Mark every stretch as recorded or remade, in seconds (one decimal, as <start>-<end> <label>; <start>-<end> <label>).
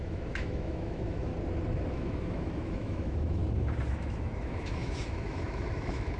0.0-1.3 remade; 1.3-1.9 recorded; 1.9-3.4 remade; 3.4-3.9 recorded; 3.9-6.2 remade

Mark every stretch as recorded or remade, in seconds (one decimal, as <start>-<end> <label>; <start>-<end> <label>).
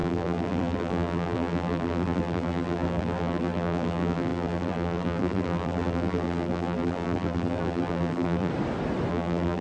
0.0-8.5 remade; 8.5-9.1 recorded; 9.1-9.6 remade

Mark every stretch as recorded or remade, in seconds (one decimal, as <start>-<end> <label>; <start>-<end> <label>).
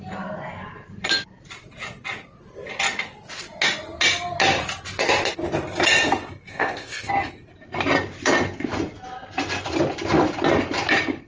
0.0-6.5 recorded; 6.5-7.1 remade; 7.1-11.3 recorded